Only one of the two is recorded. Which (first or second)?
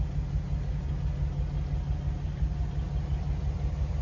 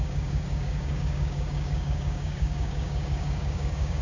first